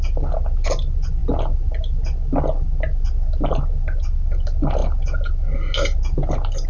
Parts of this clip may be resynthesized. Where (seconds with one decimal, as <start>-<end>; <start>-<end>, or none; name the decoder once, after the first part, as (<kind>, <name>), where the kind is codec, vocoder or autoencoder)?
none